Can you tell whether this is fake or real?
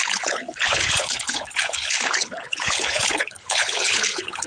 fake